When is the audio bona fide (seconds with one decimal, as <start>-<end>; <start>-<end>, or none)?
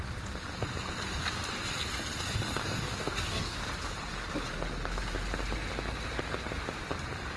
0.0-2.6; 3.6-7.4